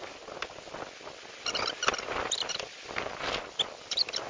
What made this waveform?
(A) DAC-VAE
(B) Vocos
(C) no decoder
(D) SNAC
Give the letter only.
C